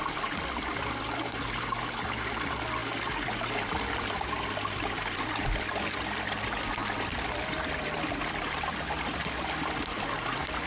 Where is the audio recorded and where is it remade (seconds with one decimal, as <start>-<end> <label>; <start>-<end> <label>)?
0.0-2.8 remade; 2.8-4.5 recorded; 4.5-6.8 remade; 6.8-7.6 recorded; 7.6-10.7 remade